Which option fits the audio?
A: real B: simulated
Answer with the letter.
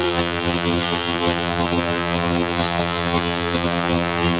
B